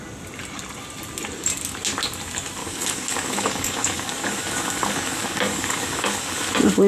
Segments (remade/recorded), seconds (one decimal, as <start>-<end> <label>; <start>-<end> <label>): 0.0-2.6 recorded; 2.6-6.5 remade; 6.5-6.9 recorded